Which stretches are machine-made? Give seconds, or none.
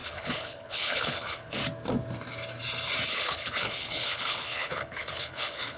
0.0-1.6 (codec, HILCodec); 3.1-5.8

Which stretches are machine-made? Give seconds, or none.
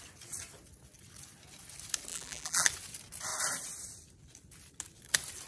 2.1-2.7 (vocoder, BigVGAN v2)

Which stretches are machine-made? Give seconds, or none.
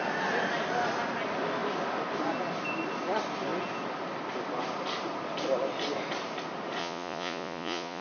6.8-8.0 (vocoder, Vocos)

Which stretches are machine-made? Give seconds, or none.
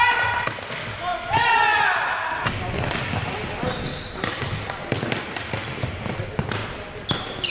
3.9-4.8 (vocoder, BigVGAN v2)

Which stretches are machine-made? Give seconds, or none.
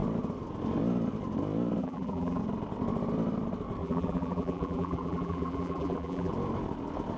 1.8-2.4 (vocoder, BigVGAN v2); 3.8-6.3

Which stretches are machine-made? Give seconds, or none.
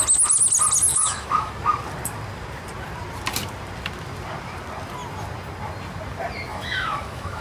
0.9-1.5 (autoencoder, DAC-VAE); 6.5-7.4